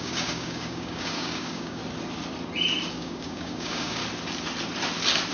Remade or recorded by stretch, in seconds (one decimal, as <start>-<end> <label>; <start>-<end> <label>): 0.0-1.8 remade; 1.8-2.9 recorded; 2.9-4.0 remade; 4.0-5.3 recorded